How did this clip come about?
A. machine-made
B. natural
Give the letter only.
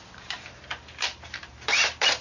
A